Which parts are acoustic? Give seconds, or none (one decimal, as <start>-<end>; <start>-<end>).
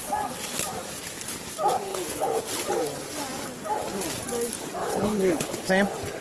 0.0-1.9; 2.4-4.8; 5.7-6.2